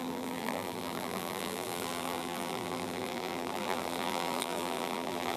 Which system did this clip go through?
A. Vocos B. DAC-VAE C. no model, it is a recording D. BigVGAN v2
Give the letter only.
D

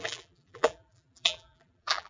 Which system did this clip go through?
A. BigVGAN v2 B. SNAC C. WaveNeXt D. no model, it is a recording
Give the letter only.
A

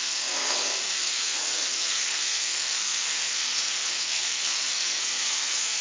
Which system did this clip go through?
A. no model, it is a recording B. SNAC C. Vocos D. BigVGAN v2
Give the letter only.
B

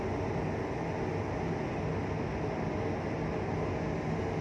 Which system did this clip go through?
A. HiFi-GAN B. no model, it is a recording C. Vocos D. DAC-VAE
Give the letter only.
B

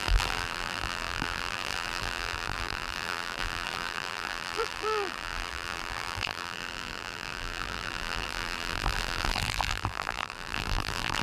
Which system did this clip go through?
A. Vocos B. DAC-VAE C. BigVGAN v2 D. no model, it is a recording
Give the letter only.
C